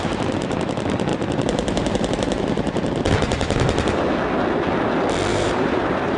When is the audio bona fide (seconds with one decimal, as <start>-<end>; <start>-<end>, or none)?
0.0-5.3